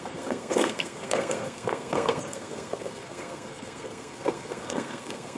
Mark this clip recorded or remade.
remade